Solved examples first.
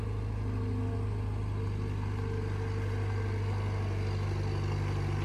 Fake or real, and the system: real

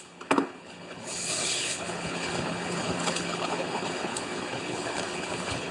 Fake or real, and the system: fake, codec, HILCodec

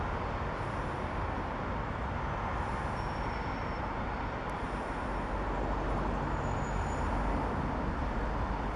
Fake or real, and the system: real